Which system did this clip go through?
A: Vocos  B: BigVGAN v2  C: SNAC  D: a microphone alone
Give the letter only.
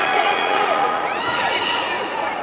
A